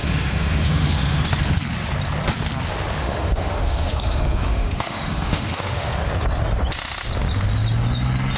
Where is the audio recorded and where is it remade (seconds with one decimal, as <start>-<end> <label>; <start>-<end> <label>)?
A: 0.0-1.2 remade; 1.2-3.0 recorded; 3.0-5.9 remade; 5.9-8.4 recorded